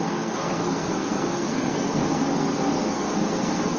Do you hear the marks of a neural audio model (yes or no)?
yes